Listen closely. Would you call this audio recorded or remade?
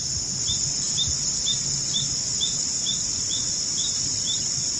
recorded